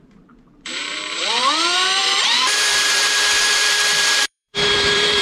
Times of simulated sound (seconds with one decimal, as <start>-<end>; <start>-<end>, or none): 0.0-5.2